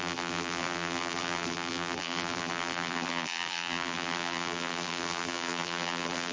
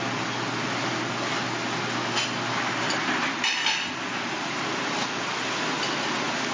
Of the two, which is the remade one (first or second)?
first